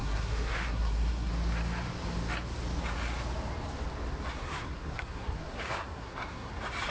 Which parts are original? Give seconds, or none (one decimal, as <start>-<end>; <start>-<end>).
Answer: 1.3-4.3; 6.5-6.9